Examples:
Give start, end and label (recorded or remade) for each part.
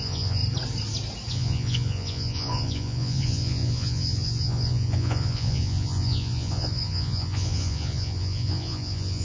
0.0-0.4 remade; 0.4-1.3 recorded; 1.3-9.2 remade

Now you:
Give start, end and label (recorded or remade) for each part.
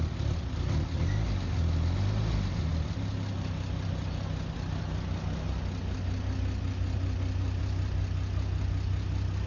0.0-9.5 recorded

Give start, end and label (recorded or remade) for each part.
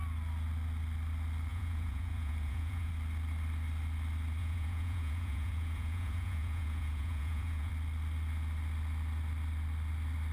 0.0-1.5 recorded; 1.5-2.9 remade; 2.9-4.4 recorded; 4.4-7.7 remade; 7.7-10.3 recorded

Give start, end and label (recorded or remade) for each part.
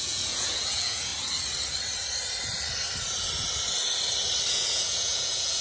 0.0-1.1 remade; 1.1-4.5 recorded; 4.5-5.6 remade